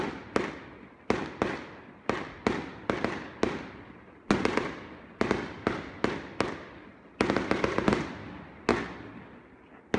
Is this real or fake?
real